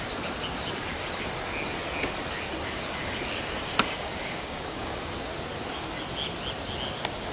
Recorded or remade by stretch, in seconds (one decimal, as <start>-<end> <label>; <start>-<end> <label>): 0.0-3.7 recorded; 3.7-5.1 remade; 5.1-7.3 recorded